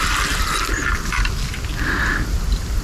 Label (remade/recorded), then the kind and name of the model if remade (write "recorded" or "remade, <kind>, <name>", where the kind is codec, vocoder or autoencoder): recorded